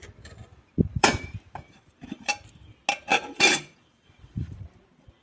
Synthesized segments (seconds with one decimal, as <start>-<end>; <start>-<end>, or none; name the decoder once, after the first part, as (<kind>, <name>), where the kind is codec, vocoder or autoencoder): 0.4-2.3 (vocoder, BigVGAN v2); 3.1-4.6